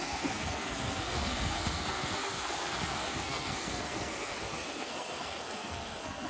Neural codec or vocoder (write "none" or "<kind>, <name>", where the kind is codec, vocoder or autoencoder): codec, SNAC